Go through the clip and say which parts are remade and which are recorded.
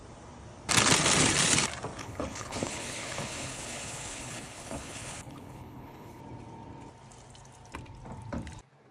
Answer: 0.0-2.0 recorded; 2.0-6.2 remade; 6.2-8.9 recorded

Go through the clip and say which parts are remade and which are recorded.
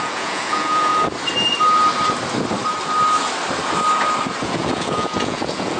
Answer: 0.0-0.9 remade; 0.9-4.4 recorded; 4.4-5.8 remade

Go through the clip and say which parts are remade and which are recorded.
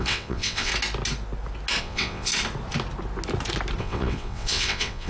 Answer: 0.0-0.7 remade; 0.7-1.8 recorded; 1.8-2.3 remade; 2.3-3.8 recorded; 3.8-5.1 remade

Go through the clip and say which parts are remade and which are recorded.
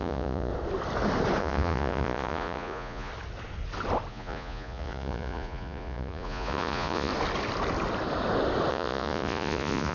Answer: 0.0-0.5 remade; 0.5-1.4 recorded; 1.4-3.1 remade; 3.1-4.1 recorded; 4.1-7.1 remade; 7.1-8.7 recorded; 8.7-9.9 remade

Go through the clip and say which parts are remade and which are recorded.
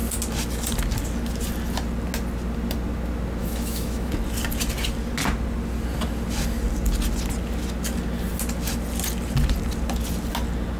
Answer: 0.0-3.4 recorded; 3.4-4.1 remade; 4.1-10.8 recorded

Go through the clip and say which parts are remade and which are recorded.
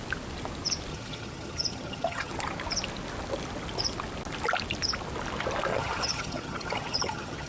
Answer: 0.0-0.9 recorded; 0.9-2.3 remade; 2.3-5.7 recorded; 5.7-7.5 remade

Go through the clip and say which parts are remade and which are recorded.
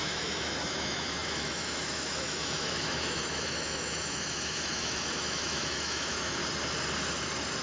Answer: 0.0-6.4 remade; 6.4-7.6 recorded